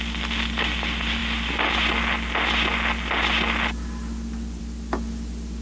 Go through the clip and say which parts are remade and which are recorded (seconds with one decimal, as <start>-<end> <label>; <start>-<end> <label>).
0.0-5.6 recorded